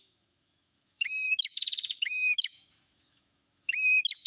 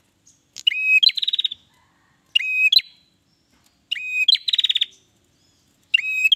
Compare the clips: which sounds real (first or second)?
second